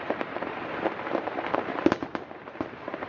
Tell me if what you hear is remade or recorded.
remade